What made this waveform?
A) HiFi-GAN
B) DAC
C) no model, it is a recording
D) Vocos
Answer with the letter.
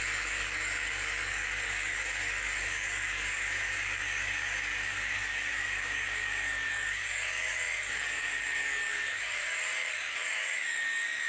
B